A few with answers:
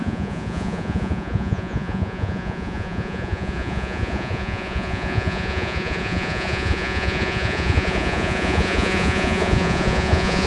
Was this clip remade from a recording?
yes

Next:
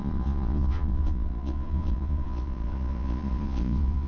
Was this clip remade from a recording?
yes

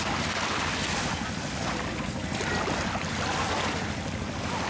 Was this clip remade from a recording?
no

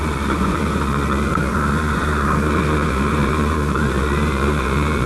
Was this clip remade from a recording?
yes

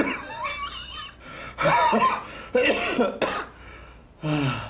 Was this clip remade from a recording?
no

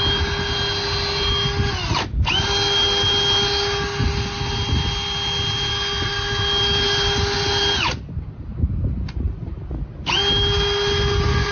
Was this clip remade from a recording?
no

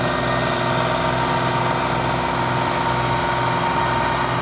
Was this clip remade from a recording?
no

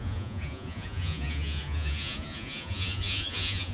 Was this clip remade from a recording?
yes